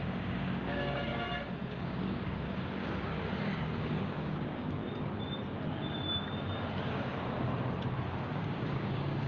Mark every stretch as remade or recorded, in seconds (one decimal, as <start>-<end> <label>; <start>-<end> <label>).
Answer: 0.0-4.8 remade; 4.8-6.8 recorded; 6.8-7.5 remade; 7.5-8.2 recorded; 8.2-9.3 remade